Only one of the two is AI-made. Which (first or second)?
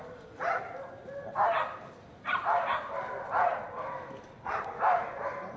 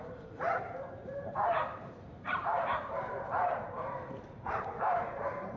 second